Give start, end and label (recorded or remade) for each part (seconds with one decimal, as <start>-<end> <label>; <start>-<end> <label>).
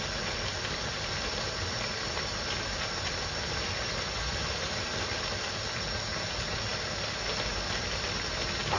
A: 0.0-6.7 remade; 6.7-7.5 recorded; 7.5-8.8 remade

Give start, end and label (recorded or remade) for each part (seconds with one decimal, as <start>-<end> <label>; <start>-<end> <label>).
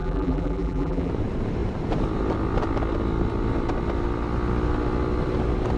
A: 0.0-1.1 remade; 1.1-5.8 recorded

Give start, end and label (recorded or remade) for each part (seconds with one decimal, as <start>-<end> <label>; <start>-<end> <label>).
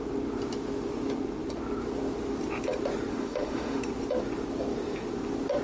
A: 0.0-3.1 recorded; 3.1-3.8 remade; 3.8-5.6 recorded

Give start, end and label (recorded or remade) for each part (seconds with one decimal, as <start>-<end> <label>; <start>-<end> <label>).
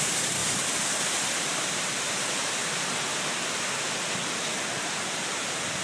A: 0.0-0.4 remade; 0.4-1.5 recorded; 1.5-2.6 remade; 2.6-4.7 recorded; 4.7-5.8 remade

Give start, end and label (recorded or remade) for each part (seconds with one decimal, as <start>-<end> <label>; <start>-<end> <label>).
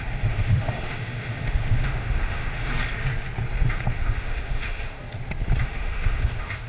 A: 0.0-2.7 remade; 2.7-3.7 recorded; 3.7-5.0 remade; 5.0-5.6 recorded; 5.6-6.7 remade